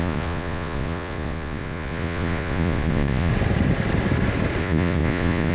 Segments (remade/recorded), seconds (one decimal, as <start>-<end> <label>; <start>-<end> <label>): 0.0-3.3 remade; 3.3-4.6 recorded; 4.6-5.5 remade